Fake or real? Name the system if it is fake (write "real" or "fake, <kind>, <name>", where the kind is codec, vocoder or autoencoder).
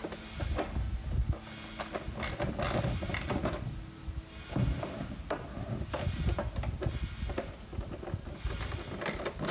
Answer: real